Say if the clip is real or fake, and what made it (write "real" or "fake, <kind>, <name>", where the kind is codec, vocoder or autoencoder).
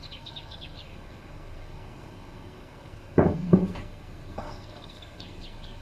fake, codec, SNAC